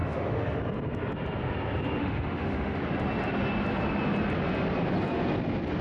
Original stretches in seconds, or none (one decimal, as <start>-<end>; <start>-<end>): 0.6-2.0; 2.8-5.8